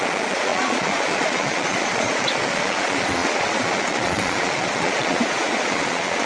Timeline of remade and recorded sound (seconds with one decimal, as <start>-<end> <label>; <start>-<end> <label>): 0.0-6.3 remade